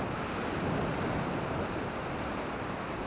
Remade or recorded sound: recorded